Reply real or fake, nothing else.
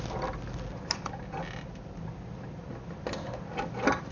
real